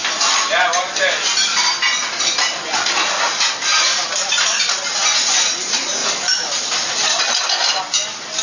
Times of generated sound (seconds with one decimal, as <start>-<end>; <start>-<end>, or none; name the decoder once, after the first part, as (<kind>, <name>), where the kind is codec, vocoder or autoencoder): 3.7-4.8 (vocoder, BigVGAN v2); 6.0-7.2